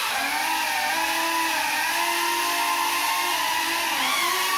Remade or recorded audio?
recorded